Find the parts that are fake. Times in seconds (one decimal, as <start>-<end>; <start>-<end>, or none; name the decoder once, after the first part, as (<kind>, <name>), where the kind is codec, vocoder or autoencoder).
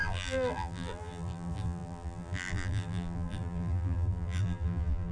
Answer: 0.0-5.1 (vocoder, BigVGAN v2)